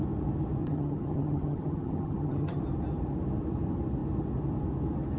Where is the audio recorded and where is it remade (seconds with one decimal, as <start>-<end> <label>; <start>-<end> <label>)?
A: 0.0-0.6 recorded; 0.6-2.6 remade; 2.6-5.2 recorded